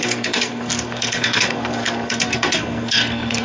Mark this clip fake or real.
fake